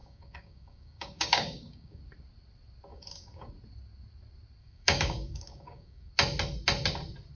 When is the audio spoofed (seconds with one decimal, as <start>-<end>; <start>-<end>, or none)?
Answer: 0.0-2.0; 2.9-3.5; 4.6-6.1